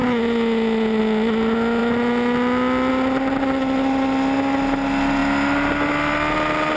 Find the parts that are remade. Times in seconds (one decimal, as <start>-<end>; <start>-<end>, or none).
none